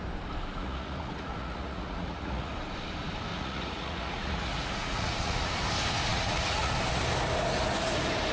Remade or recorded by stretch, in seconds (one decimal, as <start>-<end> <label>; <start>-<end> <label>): 0.0-0.5 recorded; 0.5-2.5 remade; 2.5-3.3 recorded; 3.3-5.5 remade; 5.5-6.1 recorded; 6.1-6.7 remade; 6.7-8.3 recorded